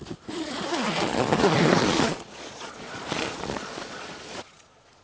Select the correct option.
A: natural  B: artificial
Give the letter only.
B